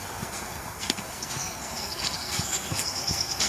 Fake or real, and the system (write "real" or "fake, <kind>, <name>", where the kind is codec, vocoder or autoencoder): fake, codec, SNAC